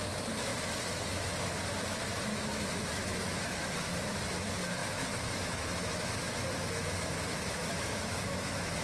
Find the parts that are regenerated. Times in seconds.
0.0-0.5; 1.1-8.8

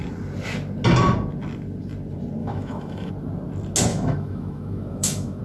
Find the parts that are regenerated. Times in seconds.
2.4-3.1; 3.9-5.4

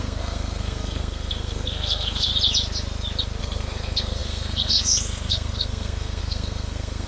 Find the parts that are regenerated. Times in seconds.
0.0-2.3; 3.4-7.1